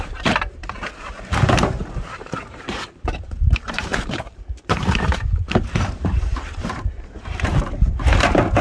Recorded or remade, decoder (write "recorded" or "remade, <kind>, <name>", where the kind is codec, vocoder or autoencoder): remade, vocoder, BigVGAN v2